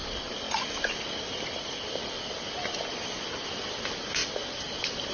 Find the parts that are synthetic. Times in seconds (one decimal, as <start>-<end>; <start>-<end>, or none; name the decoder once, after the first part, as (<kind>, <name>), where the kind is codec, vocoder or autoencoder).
0.0-2.4 (vocoder, BigVGAN v2); 4.2-5.1